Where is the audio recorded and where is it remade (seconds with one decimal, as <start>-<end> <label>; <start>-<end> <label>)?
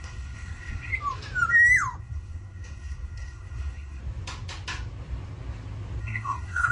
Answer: 0.0-0.9 remade; 0.9-2.0 recorded; 2.0-4.0 remade; 4.0-6.0 recorded; 6.0-6.7 remade